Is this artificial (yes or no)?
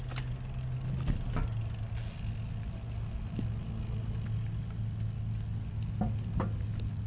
no